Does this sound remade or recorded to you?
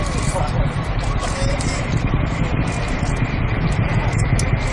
recorded